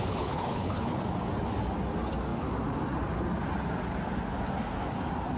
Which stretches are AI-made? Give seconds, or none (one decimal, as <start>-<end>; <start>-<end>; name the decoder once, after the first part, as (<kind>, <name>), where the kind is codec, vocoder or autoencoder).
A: 0.0-1.0 (codec, HILCodec)